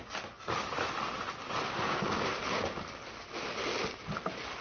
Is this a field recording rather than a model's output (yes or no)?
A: yes